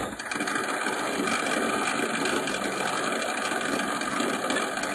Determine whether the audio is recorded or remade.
recorded